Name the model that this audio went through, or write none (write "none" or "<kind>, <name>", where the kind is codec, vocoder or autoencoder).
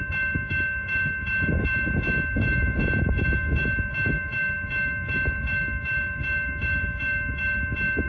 autoencoder, DAC-VAE